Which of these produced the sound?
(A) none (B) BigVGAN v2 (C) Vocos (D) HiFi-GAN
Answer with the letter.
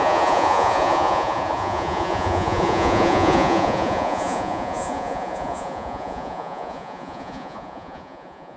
C